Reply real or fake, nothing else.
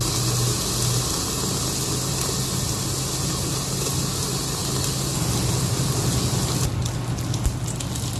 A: real